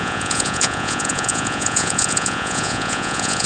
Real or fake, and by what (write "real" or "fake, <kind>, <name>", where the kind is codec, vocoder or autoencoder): fake, vocoder, Vocos